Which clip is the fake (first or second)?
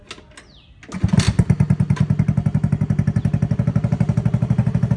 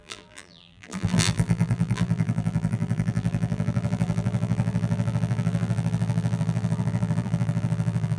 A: second